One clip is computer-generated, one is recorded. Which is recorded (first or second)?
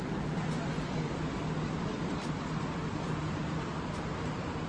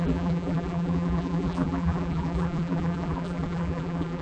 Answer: first